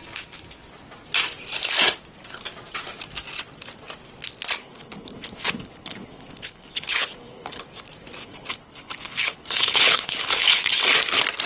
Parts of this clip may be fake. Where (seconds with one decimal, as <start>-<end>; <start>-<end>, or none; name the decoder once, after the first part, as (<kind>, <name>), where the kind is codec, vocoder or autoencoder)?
4.6-7.6 (codec, HILCodec); 8.2-10.8